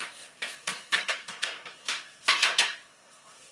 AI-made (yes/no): yes